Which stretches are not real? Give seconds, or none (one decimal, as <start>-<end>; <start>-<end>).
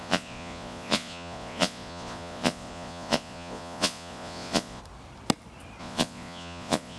0.0-4.8; 5.8-7.0